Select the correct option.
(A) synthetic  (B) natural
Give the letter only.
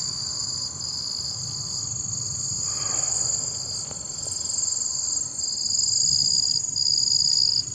B